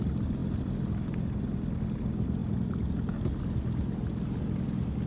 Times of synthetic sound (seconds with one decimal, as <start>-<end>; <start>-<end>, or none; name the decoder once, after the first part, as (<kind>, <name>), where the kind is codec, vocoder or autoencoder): none